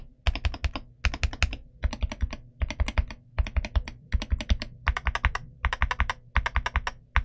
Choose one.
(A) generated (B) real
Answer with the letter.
B